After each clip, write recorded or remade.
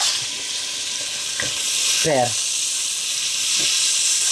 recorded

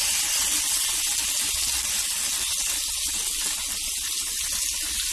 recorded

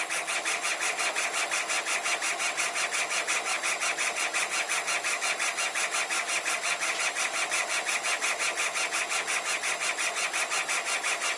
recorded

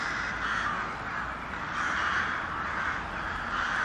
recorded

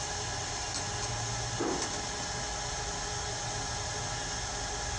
recorded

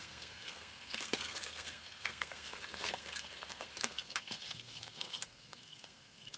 remade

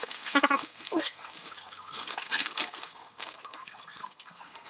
remade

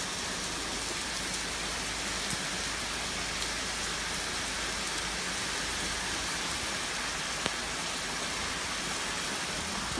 recorded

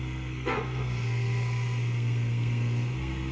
remade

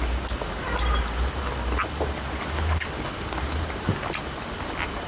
recorded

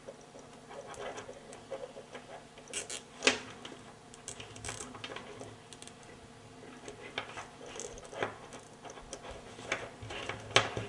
recorded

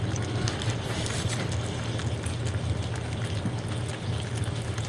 recorded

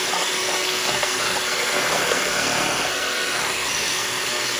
remade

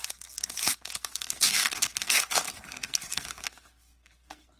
remade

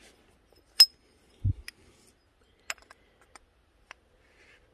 recorded